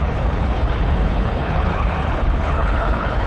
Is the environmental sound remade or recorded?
remade